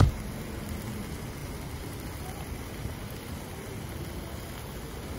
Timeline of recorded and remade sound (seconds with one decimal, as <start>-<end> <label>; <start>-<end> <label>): 0.0-1.4 recorded; 1.4-4.4 remade; 4.4-5.2 recorded